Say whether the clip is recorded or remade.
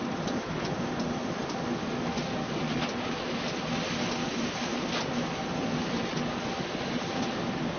recorded